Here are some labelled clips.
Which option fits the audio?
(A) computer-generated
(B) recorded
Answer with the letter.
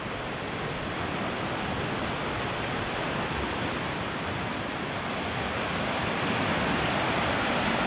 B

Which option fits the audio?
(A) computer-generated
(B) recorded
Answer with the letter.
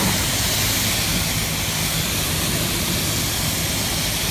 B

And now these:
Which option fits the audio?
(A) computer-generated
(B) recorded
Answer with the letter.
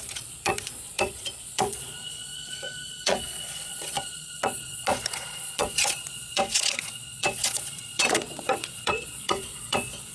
A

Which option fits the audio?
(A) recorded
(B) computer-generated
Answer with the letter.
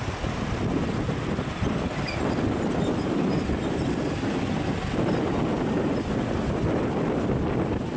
A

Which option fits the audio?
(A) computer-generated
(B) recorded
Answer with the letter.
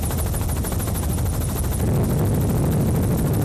B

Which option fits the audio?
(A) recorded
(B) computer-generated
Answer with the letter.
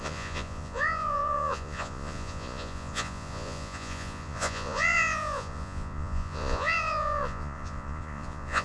B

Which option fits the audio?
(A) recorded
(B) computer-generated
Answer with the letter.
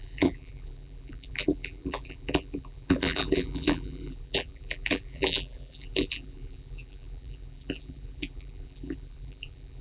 B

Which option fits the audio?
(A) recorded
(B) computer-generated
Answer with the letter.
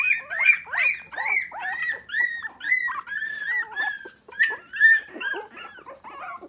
A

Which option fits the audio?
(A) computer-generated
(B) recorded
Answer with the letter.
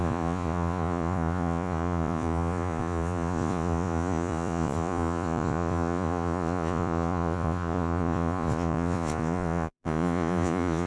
A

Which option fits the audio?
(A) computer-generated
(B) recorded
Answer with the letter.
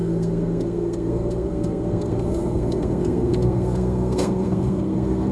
A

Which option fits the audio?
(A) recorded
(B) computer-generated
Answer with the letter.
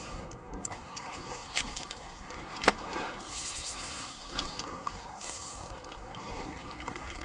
B